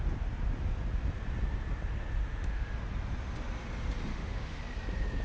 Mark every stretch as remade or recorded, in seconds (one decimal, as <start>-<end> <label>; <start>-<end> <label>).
0.0-2.2 recorded; 2.2-2.7 remade; 2.7-4.1 recorded; 4.1-4.6 remade; 4.6-5.2 recorded